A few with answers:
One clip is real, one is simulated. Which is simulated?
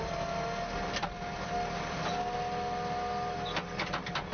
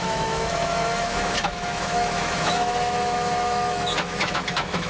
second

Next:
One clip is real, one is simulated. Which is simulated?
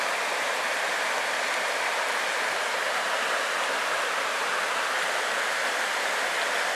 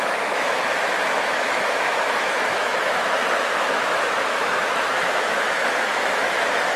second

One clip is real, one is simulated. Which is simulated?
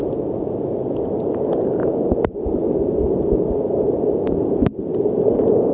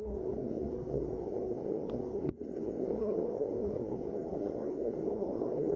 second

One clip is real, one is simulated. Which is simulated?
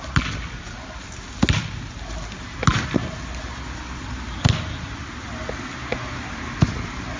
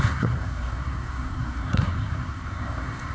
second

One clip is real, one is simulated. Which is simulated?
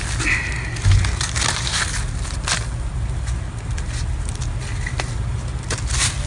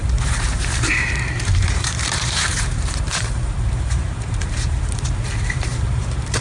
second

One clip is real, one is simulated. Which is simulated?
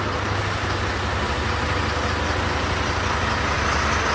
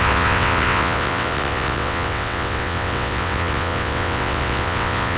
second